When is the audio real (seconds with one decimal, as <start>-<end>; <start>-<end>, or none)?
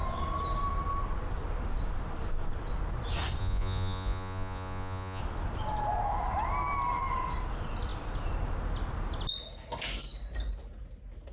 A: 0.0-3.4; 5.2-11.3